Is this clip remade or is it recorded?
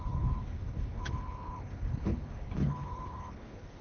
remade